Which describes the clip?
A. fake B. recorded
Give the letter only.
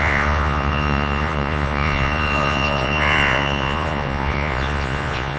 A